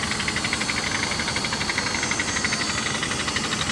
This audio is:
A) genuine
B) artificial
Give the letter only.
A